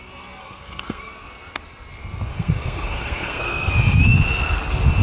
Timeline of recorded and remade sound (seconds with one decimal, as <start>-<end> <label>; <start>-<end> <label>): 0.0-0.4 recorded; 0.4-1.1 remade; 1.1-2.3 recorded; 2.3-3.7 remade; 3.7-5.0 recorded